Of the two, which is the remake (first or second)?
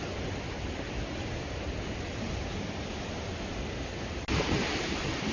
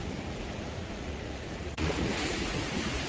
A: second